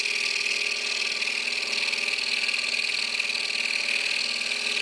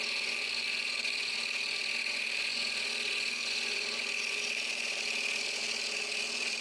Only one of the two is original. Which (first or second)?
first